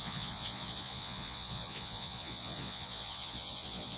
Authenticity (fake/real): fake